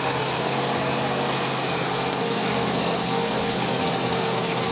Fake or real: fake